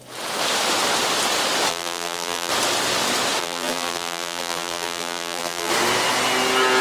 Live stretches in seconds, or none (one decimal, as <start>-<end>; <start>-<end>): 0.0-1.7; 2.5-3.4; 5.7-6.8